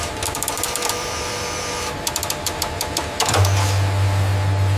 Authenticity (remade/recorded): remade